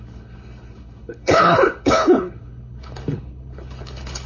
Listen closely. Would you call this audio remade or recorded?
remade